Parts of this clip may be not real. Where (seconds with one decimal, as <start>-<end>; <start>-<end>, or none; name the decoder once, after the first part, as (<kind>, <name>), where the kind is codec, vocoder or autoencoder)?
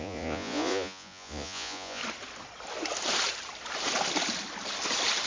0.0-2.0 (vocoder, Vocos)